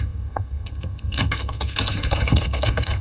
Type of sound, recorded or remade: remade